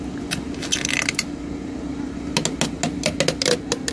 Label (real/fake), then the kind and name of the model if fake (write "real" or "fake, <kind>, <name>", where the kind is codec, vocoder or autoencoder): real